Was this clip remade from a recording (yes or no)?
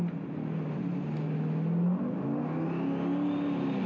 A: no